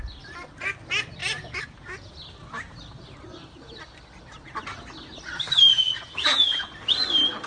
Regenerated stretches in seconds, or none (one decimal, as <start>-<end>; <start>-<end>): 1.2-2.1; 5.7-6.6